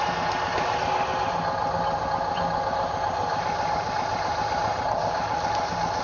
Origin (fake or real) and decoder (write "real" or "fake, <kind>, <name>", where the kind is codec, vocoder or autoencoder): real